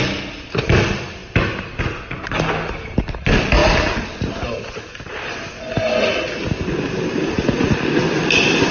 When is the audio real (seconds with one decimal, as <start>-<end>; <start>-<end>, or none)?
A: 0.0-1.2; 1.8-8.7